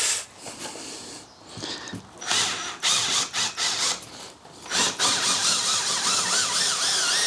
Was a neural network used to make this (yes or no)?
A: no